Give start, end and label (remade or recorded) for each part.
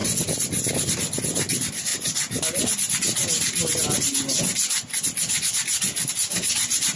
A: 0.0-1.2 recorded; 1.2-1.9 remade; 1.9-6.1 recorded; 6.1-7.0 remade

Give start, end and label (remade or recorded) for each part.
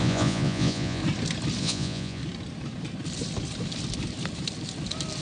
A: 0.0-1.0 remade; 1.0-1.6 recorded; 1.6-2.2 remade; 2.2-5.2 recorded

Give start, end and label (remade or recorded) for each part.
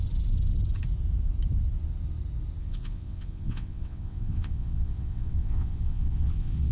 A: 0.0-2.6 recorded; 2.6-6.7 remade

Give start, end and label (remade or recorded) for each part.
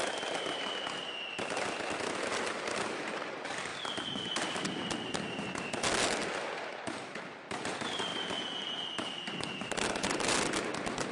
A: 0.0-11.1 recorded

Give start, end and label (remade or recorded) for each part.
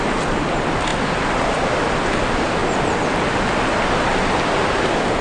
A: 0.0-5.2 recorded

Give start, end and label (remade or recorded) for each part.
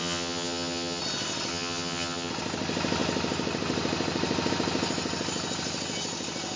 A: 0.0-1.0 remade; 1.0-1.5 recorded; 1.5-2.3 remade; 2.3-6.6 recorded